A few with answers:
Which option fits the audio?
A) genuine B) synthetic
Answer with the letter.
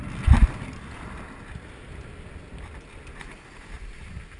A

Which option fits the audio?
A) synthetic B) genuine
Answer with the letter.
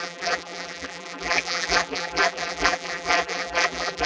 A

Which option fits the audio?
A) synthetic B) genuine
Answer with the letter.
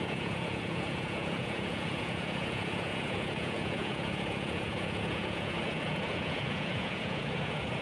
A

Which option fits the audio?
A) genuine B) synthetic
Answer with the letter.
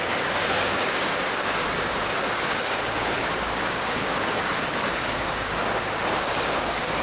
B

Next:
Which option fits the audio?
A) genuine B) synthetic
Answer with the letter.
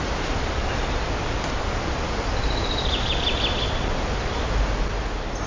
A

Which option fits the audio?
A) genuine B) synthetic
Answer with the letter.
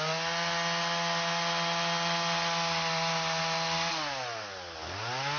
A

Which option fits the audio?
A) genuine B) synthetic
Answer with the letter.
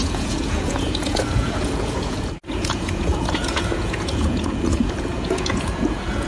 B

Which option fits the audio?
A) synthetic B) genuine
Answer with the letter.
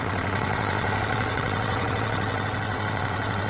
A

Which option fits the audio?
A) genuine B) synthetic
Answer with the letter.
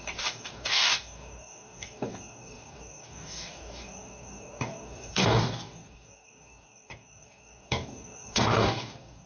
B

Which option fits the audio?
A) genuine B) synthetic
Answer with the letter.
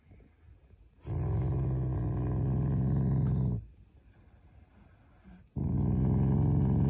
A